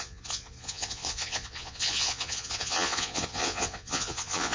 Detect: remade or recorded remade